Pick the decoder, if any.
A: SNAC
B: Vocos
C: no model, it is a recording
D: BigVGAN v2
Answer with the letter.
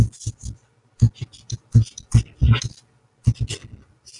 C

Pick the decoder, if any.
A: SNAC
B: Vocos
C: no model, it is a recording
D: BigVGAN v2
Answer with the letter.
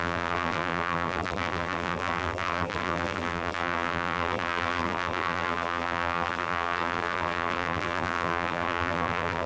D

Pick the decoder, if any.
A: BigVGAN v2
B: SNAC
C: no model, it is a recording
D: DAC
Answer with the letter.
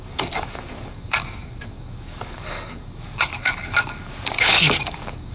D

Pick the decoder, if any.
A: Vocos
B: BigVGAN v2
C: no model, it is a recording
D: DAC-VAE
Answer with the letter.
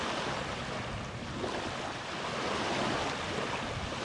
C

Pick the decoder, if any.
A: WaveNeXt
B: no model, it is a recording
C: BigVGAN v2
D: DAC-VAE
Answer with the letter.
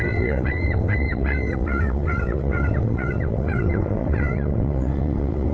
A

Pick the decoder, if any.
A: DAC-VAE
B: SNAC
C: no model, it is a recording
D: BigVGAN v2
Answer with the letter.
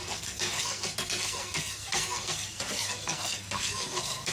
B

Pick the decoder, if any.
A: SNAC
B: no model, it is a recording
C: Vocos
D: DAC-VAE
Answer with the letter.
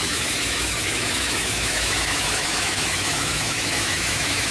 D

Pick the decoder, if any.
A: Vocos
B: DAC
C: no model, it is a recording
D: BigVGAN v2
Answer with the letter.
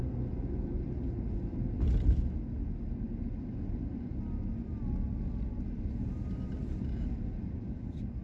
C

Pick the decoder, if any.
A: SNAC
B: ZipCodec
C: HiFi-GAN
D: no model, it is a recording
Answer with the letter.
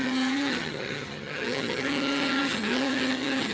C